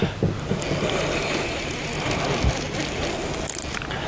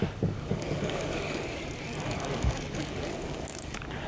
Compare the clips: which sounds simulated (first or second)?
second